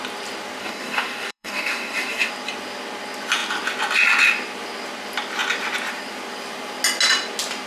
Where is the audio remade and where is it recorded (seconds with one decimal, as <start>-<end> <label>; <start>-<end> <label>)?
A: 0.0-0.6 recorded; 0.6-2.3 remade; 2.3-7.7 recorded